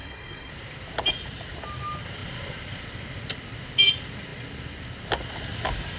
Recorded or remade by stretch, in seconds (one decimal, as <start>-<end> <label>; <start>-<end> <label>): 0.0-0.5 remade; 0.5-6.0 recorded